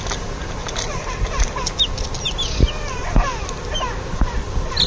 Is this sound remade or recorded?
recorded